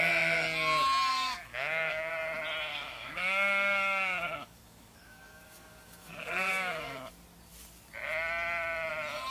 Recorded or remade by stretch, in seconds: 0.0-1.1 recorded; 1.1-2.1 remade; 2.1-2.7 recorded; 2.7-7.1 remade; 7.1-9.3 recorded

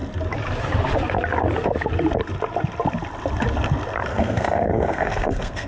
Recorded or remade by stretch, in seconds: 0.0-4.1 recorded; 4.1-5.7 remade

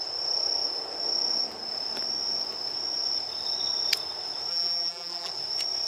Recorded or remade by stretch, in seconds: 0.0-4.5 recorded; 4.5-5.3 remade; 5.3-5.9 recorded

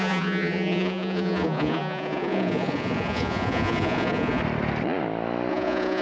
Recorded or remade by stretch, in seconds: 0.0-4.4 remade; 4.4-5.5 recorded; 5.5-6.0 remade